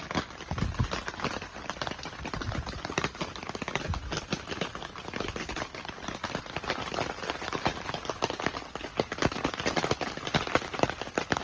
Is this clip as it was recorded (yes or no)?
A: yes